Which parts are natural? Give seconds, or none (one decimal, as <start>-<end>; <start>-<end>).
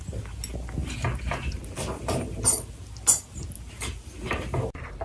0.0-5.0